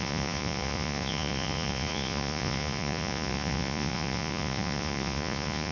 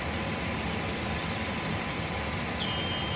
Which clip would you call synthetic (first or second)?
first